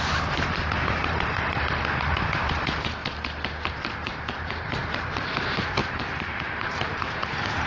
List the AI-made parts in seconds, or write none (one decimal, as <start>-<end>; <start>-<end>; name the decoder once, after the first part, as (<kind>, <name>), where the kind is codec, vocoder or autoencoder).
0.0-3.0 (vocoder, BigVGAN v2); 3.7-7.7